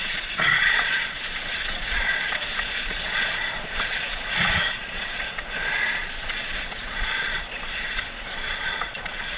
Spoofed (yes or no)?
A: yes